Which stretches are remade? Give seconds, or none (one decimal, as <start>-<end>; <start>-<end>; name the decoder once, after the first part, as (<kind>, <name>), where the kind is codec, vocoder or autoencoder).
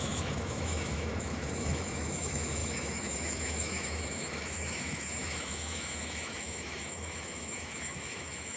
0.0-8.6 (autoencoder, DAC-VAE)